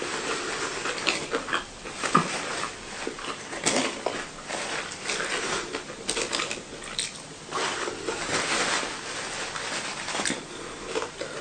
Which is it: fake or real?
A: real